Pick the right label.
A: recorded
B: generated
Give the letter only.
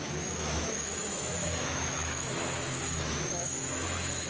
B